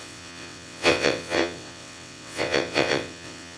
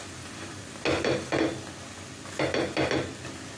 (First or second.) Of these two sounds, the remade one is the first